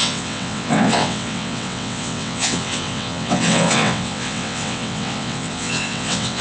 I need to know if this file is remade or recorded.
remade